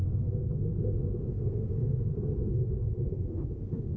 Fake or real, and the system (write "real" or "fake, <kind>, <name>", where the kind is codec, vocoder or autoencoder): fake, codec, SNAC